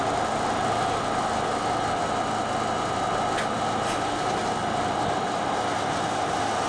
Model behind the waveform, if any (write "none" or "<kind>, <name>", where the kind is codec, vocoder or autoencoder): none